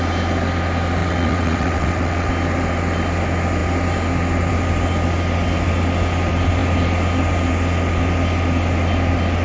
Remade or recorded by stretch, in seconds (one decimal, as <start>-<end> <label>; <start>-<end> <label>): 0.0-1.0 recorded; 1.0-2.3 remade; 2.3-9.4 recorded